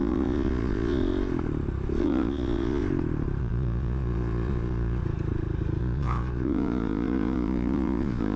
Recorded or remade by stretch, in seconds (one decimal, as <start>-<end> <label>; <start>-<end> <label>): 0.0-1.0 remade; 1.0-2.0 recorded; 2.0-2.8 remade; 2.8-3.4 recorded; 3.4-5.0 remade; 5.0-5.8 recorded; 5.8-8.4 remade